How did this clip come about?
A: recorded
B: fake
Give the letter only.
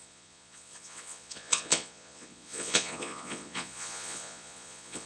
B